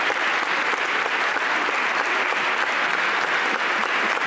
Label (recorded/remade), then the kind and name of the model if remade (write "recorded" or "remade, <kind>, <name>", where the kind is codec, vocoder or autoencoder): recorded